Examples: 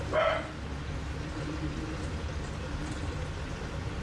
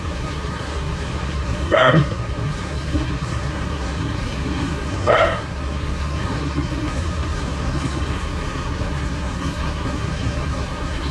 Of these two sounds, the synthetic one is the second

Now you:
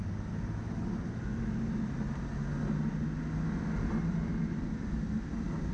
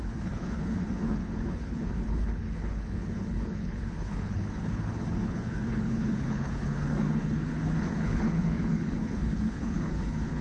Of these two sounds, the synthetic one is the second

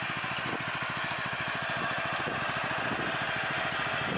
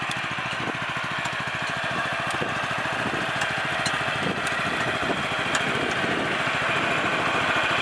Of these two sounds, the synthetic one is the second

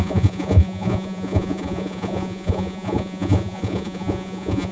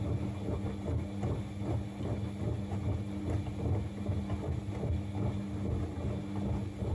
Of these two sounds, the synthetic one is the first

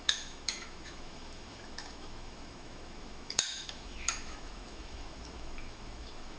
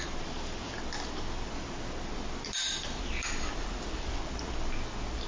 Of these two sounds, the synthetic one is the first